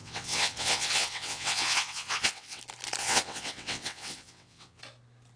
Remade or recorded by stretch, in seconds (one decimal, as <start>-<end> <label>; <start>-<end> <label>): 0.0-2.6 remade; 2.6-3.0 recorded; 3.0-4.8 remade; 4.8-5.4 recorded

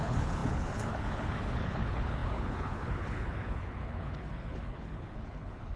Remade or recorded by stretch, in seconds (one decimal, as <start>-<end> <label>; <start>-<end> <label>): 0.0-5.8 remade

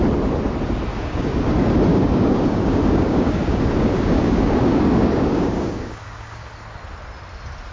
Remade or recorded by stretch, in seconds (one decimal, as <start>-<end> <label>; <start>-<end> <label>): 0.0-0.9 recorded; 0.9-1.5 remade; 1.5-1.9 recorded; 1.9-6.5 remade; 6.5-7.7 recorded